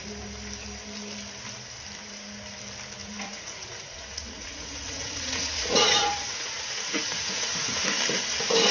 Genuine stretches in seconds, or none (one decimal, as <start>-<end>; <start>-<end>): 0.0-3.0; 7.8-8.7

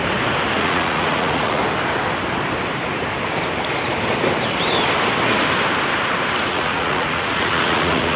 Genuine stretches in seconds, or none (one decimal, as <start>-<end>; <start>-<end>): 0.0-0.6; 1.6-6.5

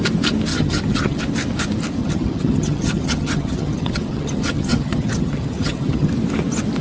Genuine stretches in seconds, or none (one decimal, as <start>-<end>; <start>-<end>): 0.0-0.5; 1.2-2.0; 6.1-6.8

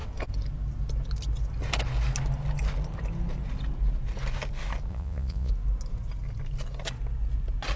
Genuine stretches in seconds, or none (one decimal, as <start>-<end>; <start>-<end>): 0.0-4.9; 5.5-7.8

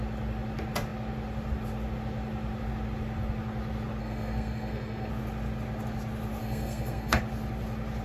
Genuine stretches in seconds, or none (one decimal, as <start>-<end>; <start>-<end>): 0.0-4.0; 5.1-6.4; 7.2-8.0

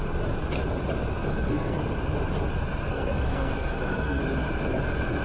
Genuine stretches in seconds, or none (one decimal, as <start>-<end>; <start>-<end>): 0.0-1.2; 1.8-2.9; 4.2-5.2